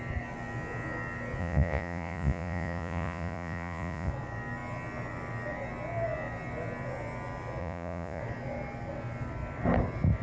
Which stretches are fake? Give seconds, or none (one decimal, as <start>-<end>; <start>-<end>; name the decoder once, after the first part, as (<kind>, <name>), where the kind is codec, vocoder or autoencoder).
1.4-4.1 (vocoder, Vocos); 7.6-8.2

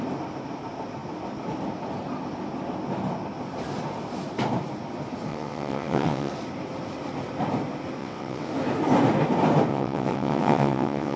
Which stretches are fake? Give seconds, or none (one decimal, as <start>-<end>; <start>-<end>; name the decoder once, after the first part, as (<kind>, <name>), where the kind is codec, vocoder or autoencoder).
5.3-6.3 (vocoder, WaveNeXt); 8.0-8.5; 9.7-11.2

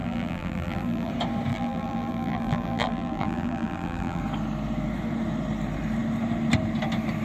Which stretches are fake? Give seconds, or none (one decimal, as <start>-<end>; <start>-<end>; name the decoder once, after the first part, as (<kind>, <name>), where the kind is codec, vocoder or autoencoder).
0.0-1.1 (vocoder, BigVGAN v2); 1.5-4.2

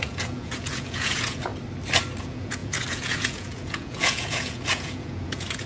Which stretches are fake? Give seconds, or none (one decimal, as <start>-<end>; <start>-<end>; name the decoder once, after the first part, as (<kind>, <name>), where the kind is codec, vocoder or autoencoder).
0.0-1.5 (vocoder, Vocos); 2.2-5.7

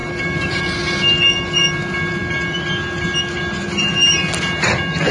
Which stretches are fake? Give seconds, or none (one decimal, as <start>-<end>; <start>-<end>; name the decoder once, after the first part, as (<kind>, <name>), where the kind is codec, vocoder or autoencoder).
0.0-0.6 (vocoder, BigVGAN v2)

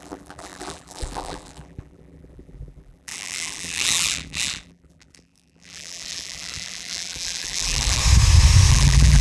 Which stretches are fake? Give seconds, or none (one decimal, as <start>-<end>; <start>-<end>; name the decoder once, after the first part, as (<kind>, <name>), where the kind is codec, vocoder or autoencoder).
0.0-8.0 (vocoder, BigVGAN v2); 8.7-9.2

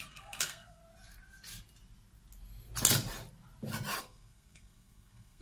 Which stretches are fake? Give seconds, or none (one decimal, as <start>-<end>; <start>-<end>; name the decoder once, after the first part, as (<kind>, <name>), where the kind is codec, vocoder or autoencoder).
0.0-0.8 (codec, SNAC); 4.0-5.4

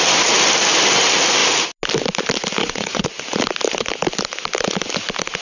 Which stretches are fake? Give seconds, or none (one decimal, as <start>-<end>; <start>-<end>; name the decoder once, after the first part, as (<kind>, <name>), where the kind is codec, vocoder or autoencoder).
2.6-3.2 (vocoder, Vocos)